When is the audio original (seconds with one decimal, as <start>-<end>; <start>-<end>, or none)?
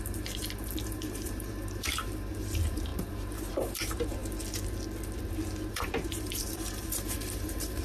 4.2-5.7